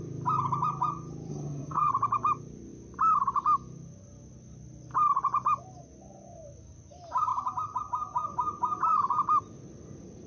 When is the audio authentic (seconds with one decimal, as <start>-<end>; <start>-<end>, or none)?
0.0-1.3; 1.9-10.3